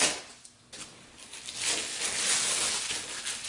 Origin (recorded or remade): recorded